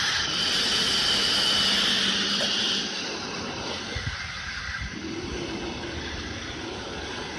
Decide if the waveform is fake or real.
real